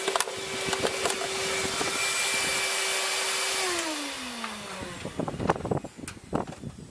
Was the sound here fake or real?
real